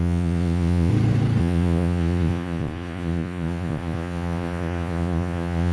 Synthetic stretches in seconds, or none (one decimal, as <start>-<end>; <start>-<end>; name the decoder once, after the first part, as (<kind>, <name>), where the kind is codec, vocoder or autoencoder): 0.0-0.9 (vocoder, Vocos); 1.4-5.7